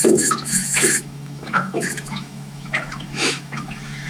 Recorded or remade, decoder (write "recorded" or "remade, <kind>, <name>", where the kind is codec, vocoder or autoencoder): remade, autoencoder, DAC-VAE